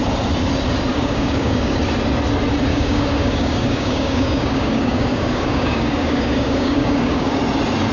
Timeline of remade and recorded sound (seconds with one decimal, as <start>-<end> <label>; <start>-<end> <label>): 0.0-0.9 recorded; 0.9-1.8 remade; 1.8-2.7 recorded; 2.7-7.4 remade; 7.4-7.9 recorded